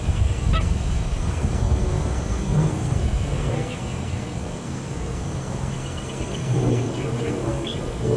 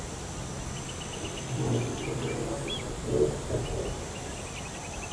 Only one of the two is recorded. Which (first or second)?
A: second